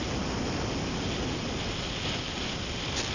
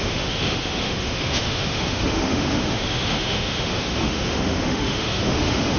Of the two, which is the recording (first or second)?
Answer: first